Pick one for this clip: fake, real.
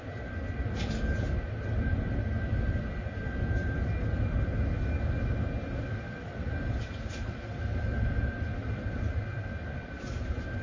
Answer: real